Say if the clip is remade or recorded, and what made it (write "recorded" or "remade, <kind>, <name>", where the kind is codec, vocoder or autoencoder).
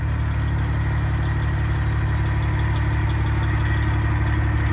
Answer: recorded